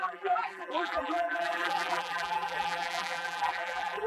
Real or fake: fake